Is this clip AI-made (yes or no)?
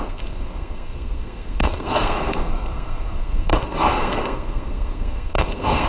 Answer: yes